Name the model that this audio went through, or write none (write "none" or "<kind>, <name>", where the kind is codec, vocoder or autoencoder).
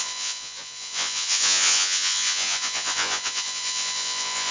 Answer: vocoder, Vocos